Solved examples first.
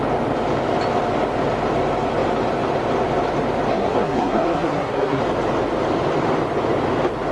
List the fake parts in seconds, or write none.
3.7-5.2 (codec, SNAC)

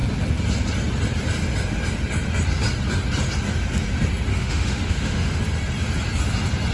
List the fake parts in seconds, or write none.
4.3-5.4 (autoencoder, DAC-VAE)

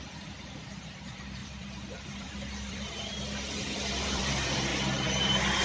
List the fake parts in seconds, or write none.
0.0-4.7 (vocoder, BigVGAN v2)

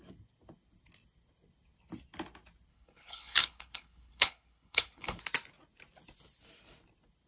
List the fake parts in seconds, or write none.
2.7-5.2 (codec, HILCodec)

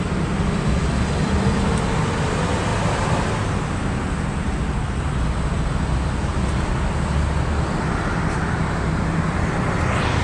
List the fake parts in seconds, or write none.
2.7-3.9 (vocoder, BigVGAN v2)